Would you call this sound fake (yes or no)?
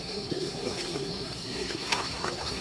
yes